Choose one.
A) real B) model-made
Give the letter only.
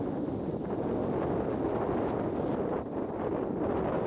A